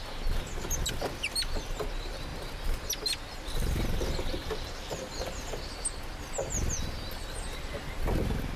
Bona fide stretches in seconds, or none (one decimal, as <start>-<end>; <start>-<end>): 0.0-4.4; 5.7-8.6